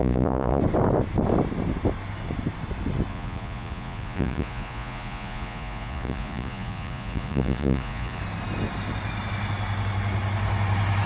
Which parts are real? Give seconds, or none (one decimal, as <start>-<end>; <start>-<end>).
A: 0.6-3.1; 8.2-11.1